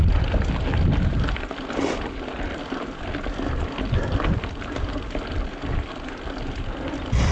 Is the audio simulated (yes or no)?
no